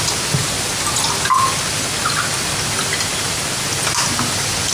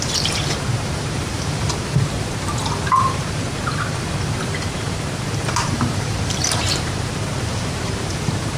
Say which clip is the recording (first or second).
first